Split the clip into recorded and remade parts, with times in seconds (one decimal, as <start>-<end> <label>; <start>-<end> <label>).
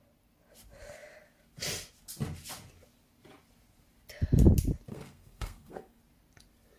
0.0-4.9 recorded; 4.9-6.0 remade; 6.0-6.8 recorded